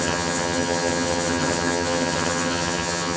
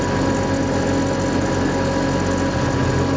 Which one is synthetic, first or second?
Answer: first